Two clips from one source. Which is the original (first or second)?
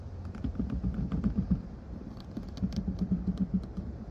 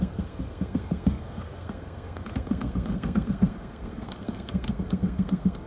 first